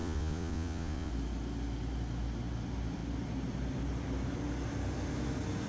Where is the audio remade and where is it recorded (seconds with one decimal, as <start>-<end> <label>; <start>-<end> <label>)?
0.0-1.1 remade; 1.1-5.7 recorded